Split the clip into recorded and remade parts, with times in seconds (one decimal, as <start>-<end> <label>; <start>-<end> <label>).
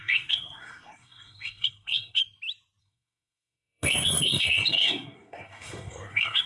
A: 0.0-2.2 remade; 2.2-2.8 recorded; 2.8-6.5 remade